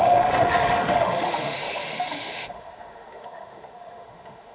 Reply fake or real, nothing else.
fake